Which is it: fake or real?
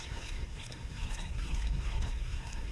fake